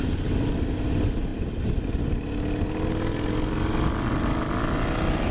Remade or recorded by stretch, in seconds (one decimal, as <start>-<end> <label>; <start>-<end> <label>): 0.0-5.3 recorded

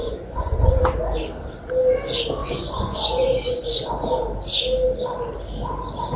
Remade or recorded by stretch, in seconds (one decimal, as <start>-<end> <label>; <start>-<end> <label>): 0.0-0.8 remade; 0.8-2.4 recorded; 2.4-4.0 remade; 4.0-6.2 recorded